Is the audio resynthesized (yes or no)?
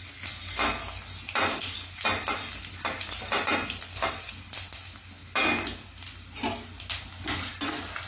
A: no